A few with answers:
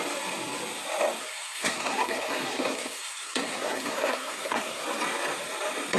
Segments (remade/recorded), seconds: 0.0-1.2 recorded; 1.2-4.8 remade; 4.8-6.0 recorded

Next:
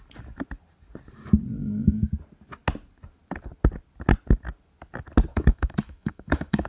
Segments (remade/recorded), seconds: 0.0-1.6 recorded; 1.6-2.1 remade; 2.1-5.3 recorded; 5.3-6.7 remade

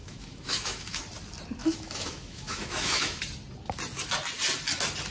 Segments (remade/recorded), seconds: 0.0-1.0 remade; 1.0-1.6 recorded; 1.6-3.2 remade; 3.2-5.1 recorded

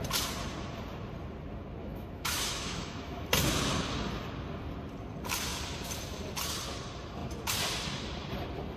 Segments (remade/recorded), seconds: 0.0-1.8 recorded; 1.8-3.3 remade; 3.3-8.8 recorded

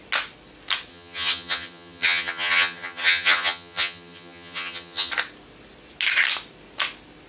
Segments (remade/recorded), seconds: 0.0-0.9 recorded; 0.9-5.1 remade; 5.1-7.3 recorded